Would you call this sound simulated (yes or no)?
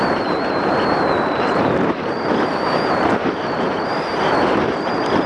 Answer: yes